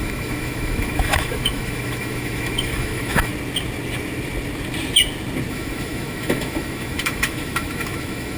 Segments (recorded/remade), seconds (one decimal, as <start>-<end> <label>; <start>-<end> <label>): 0.0-3.3 remade; 3.3-5.5 recorded; 5.5-8.4 remade